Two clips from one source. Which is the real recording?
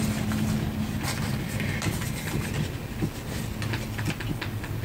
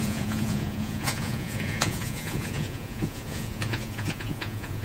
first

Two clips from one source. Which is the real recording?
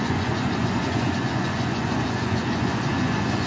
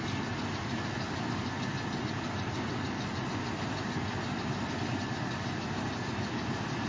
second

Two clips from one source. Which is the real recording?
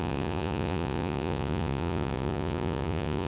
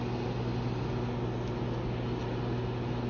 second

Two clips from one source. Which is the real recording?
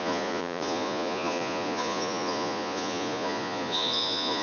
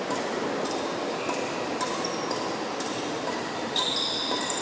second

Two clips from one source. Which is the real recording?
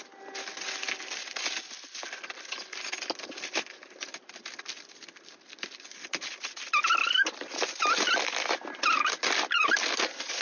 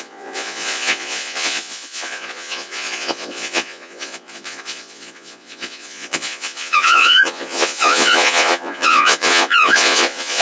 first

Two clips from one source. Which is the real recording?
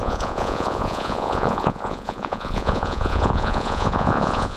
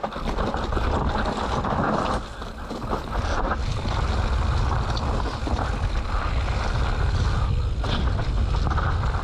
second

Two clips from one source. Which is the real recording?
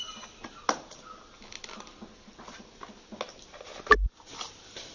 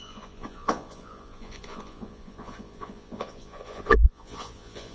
first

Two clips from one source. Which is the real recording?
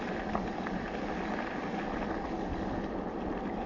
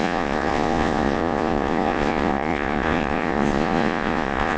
first